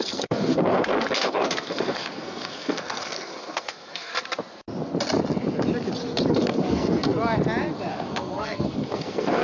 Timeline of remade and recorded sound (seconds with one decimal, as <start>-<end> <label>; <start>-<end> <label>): 0.0-4.1 remade; 4.1-6.3 recorded; 6.3-7.1 remade; 7.1-7.9 recorded; 7.9-9.4 remade